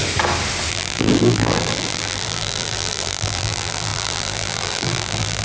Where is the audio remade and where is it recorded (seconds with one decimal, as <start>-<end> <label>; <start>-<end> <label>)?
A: 0.0-0.7 recorded; 0.7-5.4 remade